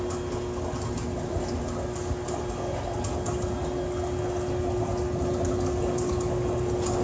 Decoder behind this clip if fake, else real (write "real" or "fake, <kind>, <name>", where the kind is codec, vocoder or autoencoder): real